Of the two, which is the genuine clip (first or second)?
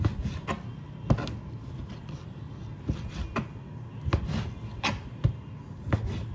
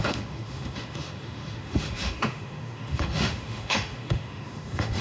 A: first